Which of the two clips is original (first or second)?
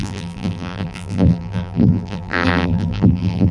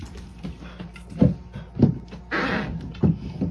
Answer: second